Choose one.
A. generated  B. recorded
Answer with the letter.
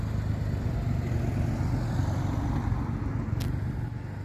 B